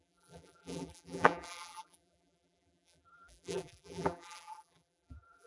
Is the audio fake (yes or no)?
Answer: yes